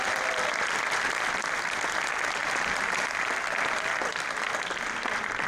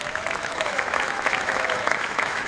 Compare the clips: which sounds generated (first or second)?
second